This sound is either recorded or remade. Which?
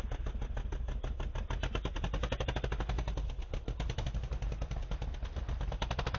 recorded